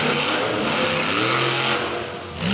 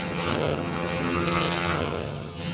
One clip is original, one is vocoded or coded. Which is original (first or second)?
first